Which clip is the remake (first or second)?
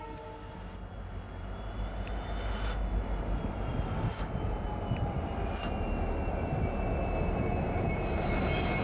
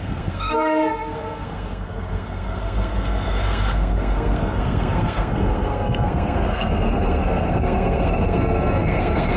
second